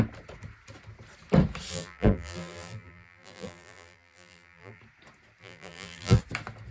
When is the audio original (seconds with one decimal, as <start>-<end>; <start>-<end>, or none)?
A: 0.0-1.7; 4.8-5.4; 6.2-6.7